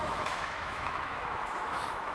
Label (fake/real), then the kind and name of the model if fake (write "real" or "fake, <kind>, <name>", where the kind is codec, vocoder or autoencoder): fake, autoencoder, DAC-VAE